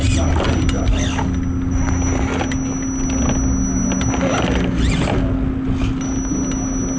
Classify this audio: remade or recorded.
recorded